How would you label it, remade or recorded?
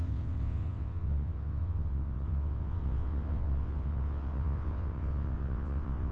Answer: remade